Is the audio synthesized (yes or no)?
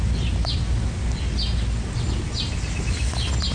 no